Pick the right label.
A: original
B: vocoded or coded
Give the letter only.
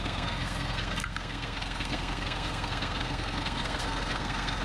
B